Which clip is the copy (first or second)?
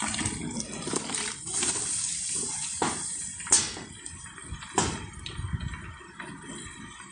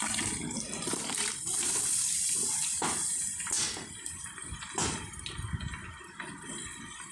second